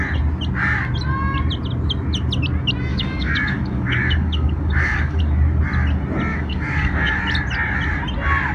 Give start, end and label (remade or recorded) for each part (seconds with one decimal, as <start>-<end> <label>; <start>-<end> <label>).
0.0-2.9 recorded; 2.9-5.2 remade; 5.2-6.3 recorded; 6.3-7.2 remade; 7.2-8.5 recorded